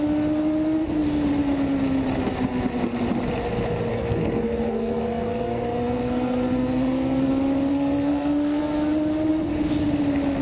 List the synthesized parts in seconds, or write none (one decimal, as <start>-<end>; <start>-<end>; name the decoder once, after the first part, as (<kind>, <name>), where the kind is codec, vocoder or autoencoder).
3.9-7.3 (codec, SNAC); 7.7-8.6